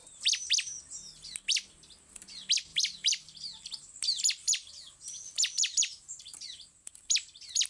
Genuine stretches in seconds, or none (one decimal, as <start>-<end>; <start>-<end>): 0.0-2.7; 6.9-7.7